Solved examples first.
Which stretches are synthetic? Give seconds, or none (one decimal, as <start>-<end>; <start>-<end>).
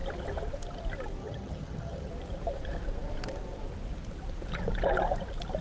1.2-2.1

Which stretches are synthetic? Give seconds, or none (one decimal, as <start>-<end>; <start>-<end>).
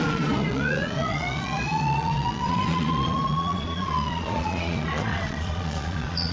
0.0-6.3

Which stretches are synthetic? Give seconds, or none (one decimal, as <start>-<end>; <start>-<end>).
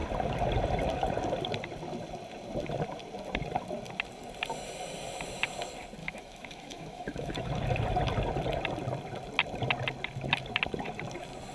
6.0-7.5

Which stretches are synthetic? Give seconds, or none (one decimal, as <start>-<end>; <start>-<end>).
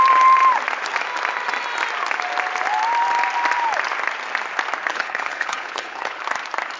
4.9-6.2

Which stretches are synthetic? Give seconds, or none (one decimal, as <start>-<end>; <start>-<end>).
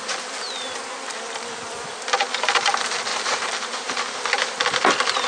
3.1-3.9